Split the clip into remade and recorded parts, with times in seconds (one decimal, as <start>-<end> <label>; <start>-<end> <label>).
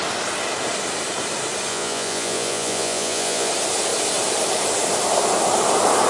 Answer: 0.0-1.7 recorded; 1.7-3.5 remade; 3.5-6.1 recorded